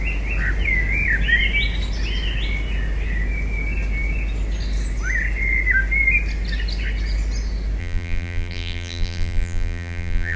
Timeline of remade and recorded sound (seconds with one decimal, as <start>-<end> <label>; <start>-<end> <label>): 0.0-7.8 recorded; 7.8-10.4 remade